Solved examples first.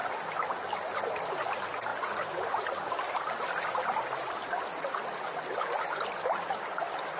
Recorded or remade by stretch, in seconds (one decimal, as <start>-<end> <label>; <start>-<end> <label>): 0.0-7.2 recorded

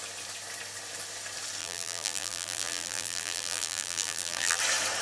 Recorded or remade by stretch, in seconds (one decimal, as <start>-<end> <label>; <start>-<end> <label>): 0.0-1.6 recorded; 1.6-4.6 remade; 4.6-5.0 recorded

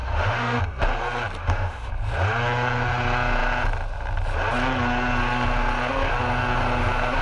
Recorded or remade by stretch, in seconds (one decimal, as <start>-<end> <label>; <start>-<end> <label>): 0.0-0.6 remade; 0.6-1.4 recorded; 1.4-1.9 remade; 1.9-7.2 recorded